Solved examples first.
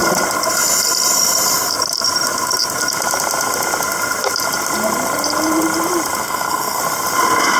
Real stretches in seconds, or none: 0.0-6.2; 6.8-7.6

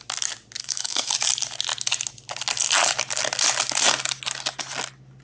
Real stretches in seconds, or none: 0.0-0.6; 1.1-5.2

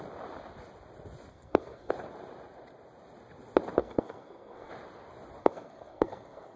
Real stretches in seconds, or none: 0.0-1.3; 1.9-3.8; 4.7-5.4

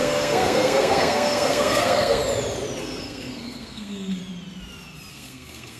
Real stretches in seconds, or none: 2.2-2.8; 4.2-5.1

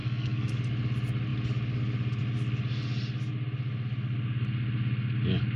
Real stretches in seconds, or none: 0.5-5.6

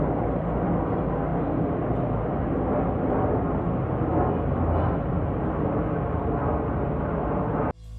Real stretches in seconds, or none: 0.0-8.0